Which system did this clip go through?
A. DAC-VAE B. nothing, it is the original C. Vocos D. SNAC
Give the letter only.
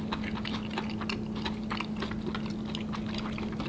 B